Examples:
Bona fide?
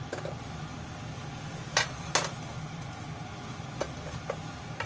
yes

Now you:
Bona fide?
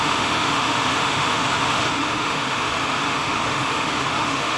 no